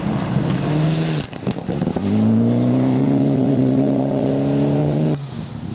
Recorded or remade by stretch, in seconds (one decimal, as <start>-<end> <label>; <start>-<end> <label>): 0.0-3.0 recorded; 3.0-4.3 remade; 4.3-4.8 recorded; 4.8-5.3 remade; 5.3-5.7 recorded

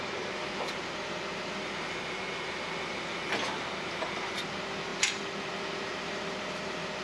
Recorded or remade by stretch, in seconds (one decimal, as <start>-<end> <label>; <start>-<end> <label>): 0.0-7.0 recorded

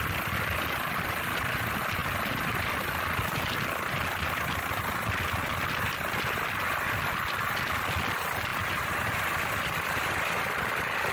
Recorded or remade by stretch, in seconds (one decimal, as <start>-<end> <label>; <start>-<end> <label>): 0.0-11.1 recorded

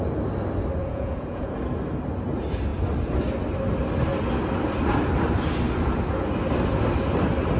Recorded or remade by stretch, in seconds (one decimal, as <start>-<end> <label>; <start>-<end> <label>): 0.0-0.8 recorded; 0.8-1.5 remade; 1.5-7.6 recorded

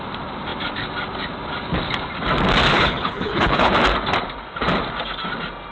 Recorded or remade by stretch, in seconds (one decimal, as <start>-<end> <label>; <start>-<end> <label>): 0.0-2.7 recorded; 2.7-3.7 remade; 3.7-5.7 recorded

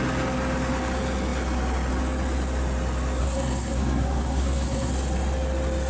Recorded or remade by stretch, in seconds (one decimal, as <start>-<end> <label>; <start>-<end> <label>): 0.0-3.2 recorded; 3.2-4.9 remade; 4.9-5.9 recorded

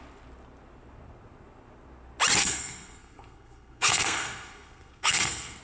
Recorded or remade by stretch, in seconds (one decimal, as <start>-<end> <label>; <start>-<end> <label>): 0.0-2.4 recorded; 2.4-5.6 remade

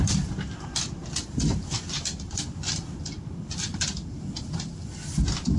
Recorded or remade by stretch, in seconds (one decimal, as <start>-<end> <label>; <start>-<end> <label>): 0.0-5.6 recorded